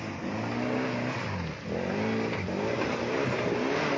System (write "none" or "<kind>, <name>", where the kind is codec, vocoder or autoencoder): none